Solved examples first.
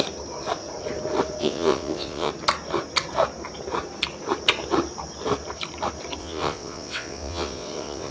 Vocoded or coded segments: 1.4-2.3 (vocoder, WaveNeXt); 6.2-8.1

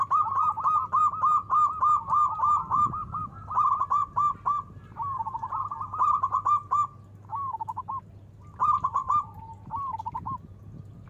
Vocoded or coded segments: 7.3-7.8 (autoencoder, DAC-VAE)

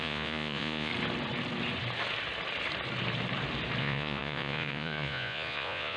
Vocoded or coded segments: 0.0-0.9 (vocoder, Vocos); 3.8-6.0

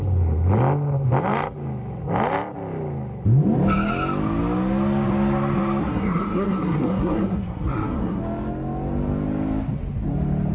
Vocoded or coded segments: 5.8-8.2 (codec, SNAC)

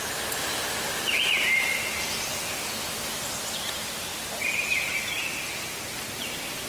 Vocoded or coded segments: 4.1-4.8 (vocoder, BigVGAN v2)

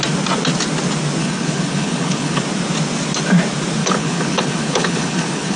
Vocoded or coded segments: 1.2-2.4 (codec, HILCodec); 3.8-5.6